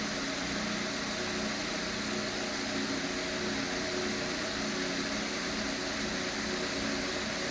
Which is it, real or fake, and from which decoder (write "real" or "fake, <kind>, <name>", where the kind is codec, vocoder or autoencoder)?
real